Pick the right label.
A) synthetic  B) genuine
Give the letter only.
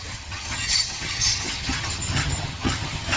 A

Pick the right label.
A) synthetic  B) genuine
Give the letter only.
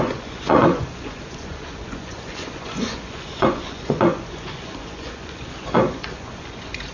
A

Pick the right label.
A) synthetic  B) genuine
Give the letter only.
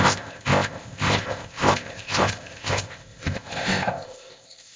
A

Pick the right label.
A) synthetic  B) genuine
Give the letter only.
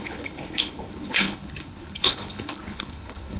A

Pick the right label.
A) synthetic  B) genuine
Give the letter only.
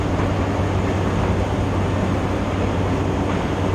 B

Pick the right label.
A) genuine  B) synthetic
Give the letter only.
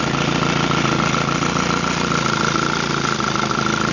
A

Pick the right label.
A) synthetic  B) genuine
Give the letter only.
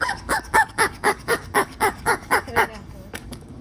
A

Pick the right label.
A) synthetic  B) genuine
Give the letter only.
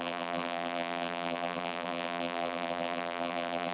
A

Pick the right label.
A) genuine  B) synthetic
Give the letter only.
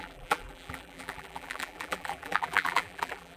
B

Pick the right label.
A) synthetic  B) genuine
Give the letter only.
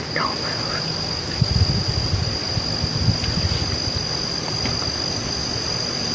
B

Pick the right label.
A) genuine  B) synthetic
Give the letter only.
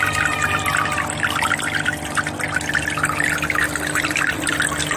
A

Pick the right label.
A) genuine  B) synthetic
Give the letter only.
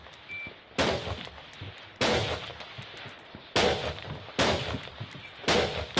A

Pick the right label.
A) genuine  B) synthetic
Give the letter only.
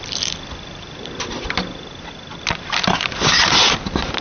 B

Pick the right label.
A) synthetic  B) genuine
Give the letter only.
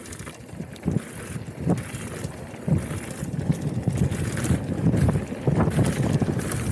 B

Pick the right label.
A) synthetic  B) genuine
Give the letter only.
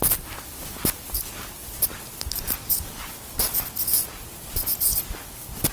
B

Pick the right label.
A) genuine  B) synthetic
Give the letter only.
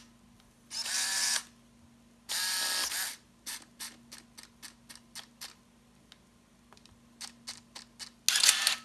A